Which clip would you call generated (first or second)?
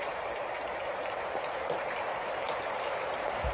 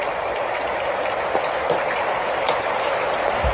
first